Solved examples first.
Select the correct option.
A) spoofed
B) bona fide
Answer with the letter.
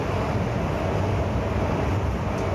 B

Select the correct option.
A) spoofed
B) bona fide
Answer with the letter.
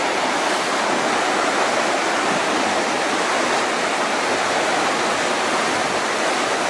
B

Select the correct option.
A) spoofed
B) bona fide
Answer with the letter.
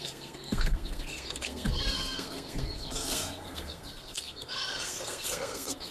A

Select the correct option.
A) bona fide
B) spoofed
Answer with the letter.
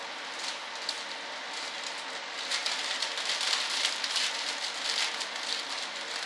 A